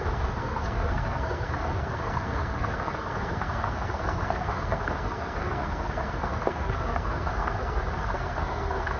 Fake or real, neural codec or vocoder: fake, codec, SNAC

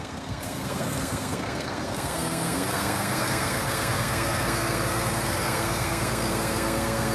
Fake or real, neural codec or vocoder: fake, codec, SNAC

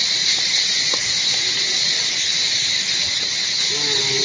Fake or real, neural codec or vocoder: real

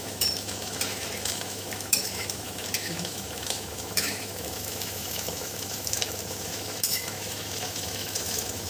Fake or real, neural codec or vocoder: fake, autoencoder, DAC-VAE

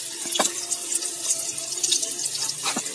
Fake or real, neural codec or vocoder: fake, vocoder, BigVGAN v2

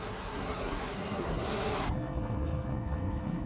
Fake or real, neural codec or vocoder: fake, codec, SNAC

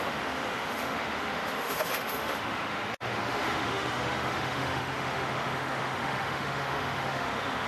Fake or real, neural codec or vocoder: fake, autoencoder, DAC-VAE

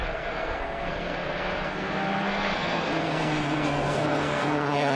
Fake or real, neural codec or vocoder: fake, codec, SNAC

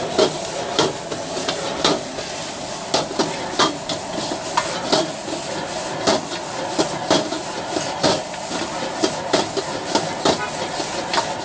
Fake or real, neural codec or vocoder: real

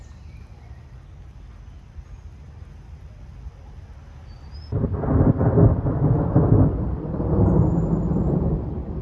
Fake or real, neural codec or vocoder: real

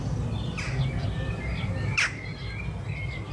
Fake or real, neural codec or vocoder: real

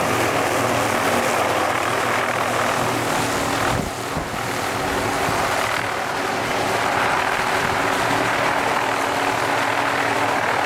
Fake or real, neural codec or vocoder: real